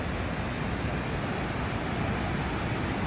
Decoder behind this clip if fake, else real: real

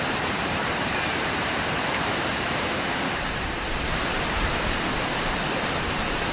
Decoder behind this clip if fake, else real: fake, vocoder, BigVGAN v2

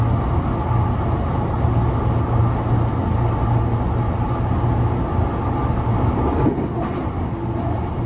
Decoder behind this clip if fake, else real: real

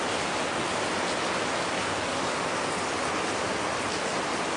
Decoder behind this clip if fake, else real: real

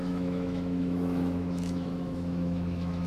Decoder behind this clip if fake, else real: fake, autoencoder, DAC-VAE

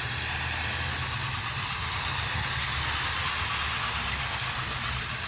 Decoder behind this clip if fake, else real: real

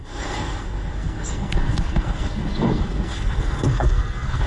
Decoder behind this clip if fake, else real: fake, codec, SNAC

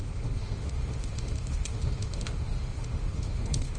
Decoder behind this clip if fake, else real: fake, autoencoder, DAC-VAE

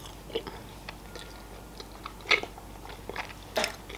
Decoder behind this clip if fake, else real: real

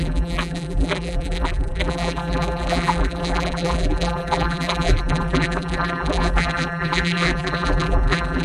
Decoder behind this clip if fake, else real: fake, vocoder, BigVGAN v2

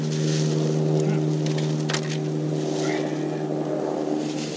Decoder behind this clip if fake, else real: real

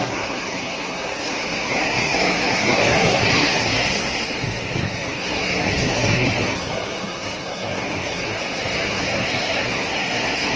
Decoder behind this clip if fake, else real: fake, codec, SNAC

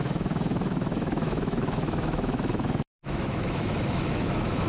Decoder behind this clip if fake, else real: fake, autoencoder, DAC-VAE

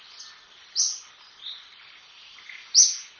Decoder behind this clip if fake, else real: real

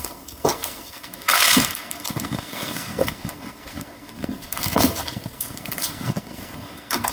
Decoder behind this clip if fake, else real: fake, codec, SNAC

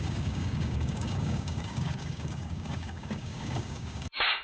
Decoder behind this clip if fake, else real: fake, codec, DAC